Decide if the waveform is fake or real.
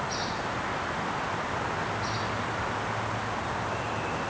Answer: real